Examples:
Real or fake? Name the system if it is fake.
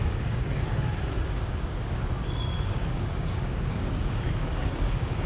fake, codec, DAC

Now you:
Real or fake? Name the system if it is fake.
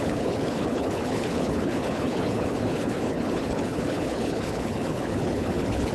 fake, codec, HILCodec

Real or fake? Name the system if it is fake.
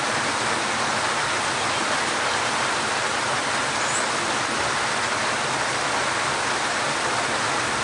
real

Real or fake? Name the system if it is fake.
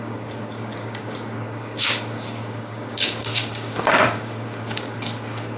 fake, codec, DAC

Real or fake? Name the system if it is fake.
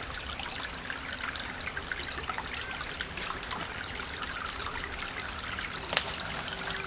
real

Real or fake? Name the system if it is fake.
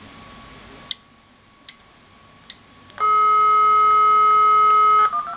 real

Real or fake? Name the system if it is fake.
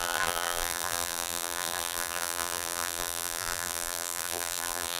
fake, vocoder, BigVGAN v2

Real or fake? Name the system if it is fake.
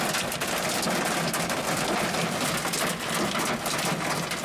real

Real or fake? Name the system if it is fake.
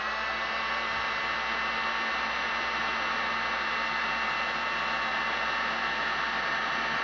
real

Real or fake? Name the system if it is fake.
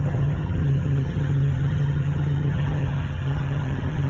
fake, vocoder, HiFi-GAN